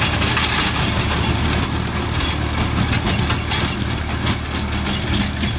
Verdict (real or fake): real